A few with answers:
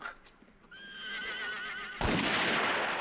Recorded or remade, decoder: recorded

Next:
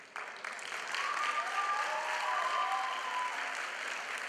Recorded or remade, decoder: recorded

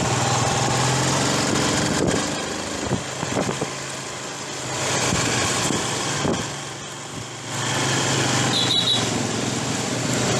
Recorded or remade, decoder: recorded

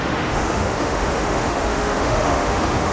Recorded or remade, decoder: remade, autoencoder, DAC-VAE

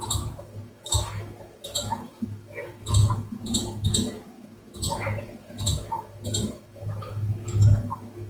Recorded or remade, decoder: remade, autoencoder, DAC-VAE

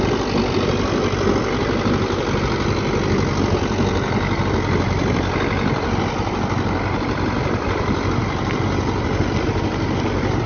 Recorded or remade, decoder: recorded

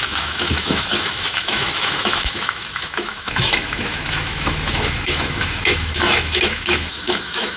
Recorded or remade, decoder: remade, autoencoder, DAC-VAE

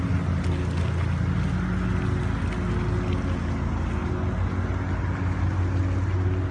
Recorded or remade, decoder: recorded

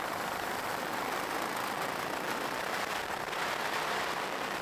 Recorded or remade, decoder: recorded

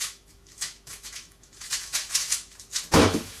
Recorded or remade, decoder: remade, autoencoder, DAC-VAE